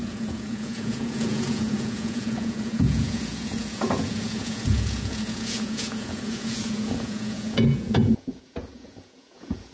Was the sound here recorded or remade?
remade